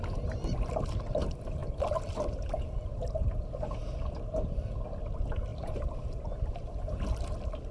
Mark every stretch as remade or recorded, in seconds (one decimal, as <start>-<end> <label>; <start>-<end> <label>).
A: 0.0-7.7 recorded